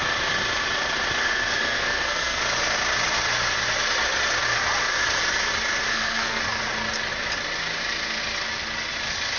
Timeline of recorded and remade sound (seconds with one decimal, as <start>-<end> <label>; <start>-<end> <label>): 0.0-1.2 recorded; 1.2-2.4 remade; 2.4-5.9 recorded; 5.9-6.4 remade; 6.4-9.4 recorded